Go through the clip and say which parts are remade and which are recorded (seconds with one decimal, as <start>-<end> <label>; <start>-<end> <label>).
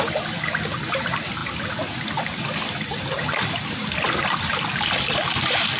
0.0-5.8 recorded